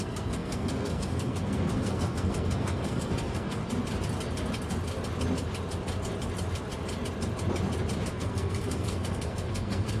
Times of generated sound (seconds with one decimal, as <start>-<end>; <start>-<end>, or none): 0.0-3.6; 8.1-10.0